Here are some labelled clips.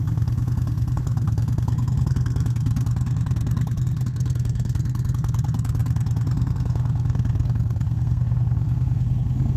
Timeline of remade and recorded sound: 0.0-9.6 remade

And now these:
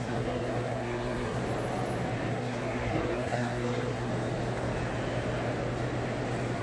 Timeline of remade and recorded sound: 0.0-1.4 remade; 1.4-2.3 recorded; 2.3-4.1 remade; 4.1-6.6 recorded

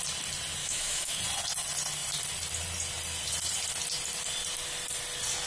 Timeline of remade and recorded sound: 0.0-0.6 recorded; 0.6-1.2 remade; 1.2-5.5 recorded

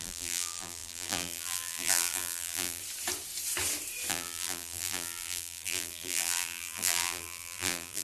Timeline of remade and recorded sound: 0.0-2.8 remade; 2.8-4.1 recorded; 4.1-8.0 remade

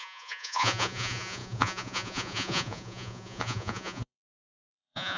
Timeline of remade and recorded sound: 0.0-5.2 remade

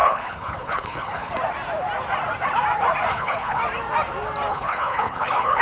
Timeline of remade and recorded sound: 0.0-1.3 remade; 1.3-3.1 recorded; 3.1-3.6 remade; 3.6-4.5 recorded; 4.5-5.6 remade

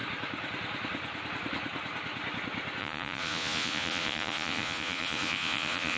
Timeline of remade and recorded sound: 0.0-2.8 recorded; 2.8-6.0 remade

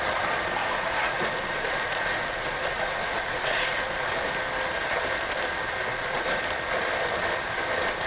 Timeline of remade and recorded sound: 0.0-0.6 recorded; 0.6-4.3 remade; 4.3-5.9 recorded; 5.9-6.4 remade; 6.4-8.1 recorded